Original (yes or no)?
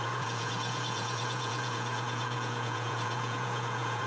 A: no